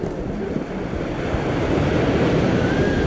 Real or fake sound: real